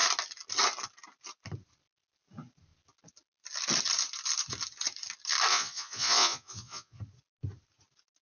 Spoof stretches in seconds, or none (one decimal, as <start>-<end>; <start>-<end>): 5.5-7.0